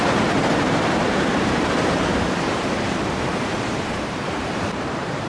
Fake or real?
fake